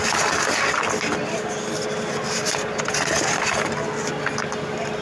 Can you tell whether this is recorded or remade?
recorded